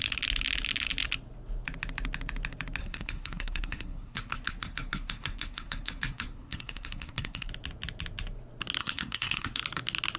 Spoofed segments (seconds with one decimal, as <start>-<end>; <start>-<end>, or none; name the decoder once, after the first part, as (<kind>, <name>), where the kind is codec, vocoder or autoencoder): 2.8-7.5 (codec, SNAC); 8.8-9.6